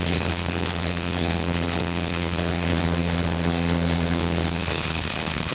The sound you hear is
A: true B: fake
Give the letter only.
B